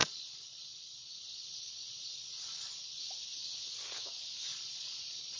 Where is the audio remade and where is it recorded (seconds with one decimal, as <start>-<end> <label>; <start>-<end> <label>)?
0.0-3.0 remade; 3.0-4.5 recorded; 4.5-5.4 remade